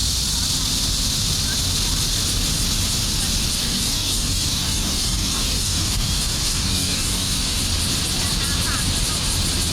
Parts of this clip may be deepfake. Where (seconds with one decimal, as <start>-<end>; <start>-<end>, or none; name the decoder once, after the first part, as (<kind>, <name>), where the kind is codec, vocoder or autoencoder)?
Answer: 3.6-7.6 (codec, DAC)